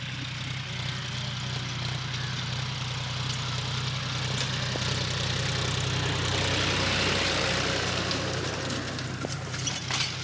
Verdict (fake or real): real